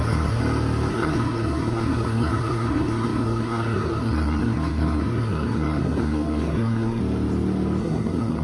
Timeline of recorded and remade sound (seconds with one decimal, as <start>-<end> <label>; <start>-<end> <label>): 0.0-0.4 remade; 0.4-0.9 recorded; 0.9-7.0 remade; 7.0-7.8 recorded; 7.8-8.4 remade

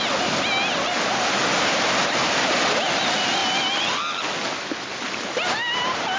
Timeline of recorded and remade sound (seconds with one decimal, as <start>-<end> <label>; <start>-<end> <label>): 0.0-6.2 recorded

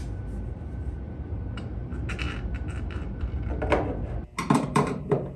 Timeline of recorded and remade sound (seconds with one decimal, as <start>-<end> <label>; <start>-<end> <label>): 0.0-0.8 recorded; 0.8-1.9 remade; 1.9-4.5 recorded; 4.5-5.4 remade

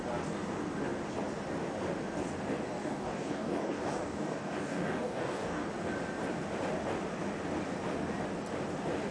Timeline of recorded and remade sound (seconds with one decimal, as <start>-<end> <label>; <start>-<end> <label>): 0.0-2.8 recorded; 2.8-5.7 remade; 5.7-9.1 recorded

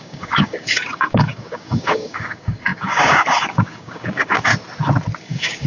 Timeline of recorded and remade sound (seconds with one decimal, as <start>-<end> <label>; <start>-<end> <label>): 0.0-4.5 remade; 4.5-5.2 recorded; 5.2-5.7 remade

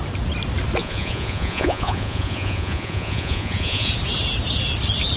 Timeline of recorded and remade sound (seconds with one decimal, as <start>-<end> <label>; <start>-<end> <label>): 0.0-0.8 recorded; 0.8-3.9 remade; 3.9-5.2 recorded

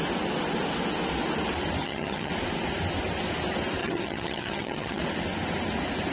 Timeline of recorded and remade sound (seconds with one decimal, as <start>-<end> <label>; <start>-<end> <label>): 0.0-1.8 recorded; 1.8-2.3 remade; 2.3-3.8 recorded; 3.8-5.0 remade; 5.0-6.1 recorded

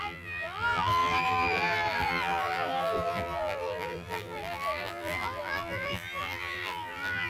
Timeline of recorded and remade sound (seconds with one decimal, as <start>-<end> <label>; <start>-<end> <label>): 0.0-7.3 remade